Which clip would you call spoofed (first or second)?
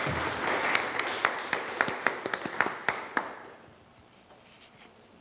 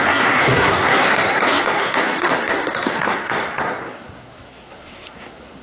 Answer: second